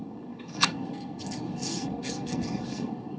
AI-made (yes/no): yes